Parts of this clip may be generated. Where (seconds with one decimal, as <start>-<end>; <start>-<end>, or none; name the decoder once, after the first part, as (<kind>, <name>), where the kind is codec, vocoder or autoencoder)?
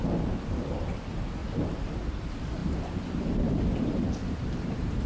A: 1.4-2.2 (vocoder, BigVGAN v2); 2.6-5.1